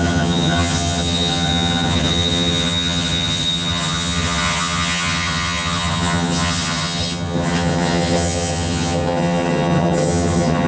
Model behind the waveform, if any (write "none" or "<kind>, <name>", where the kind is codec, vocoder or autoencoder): vocoder, HiFi-GAN